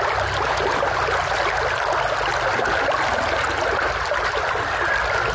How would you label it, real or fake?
real